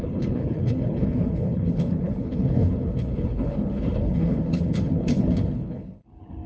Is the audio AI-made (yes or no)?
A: yes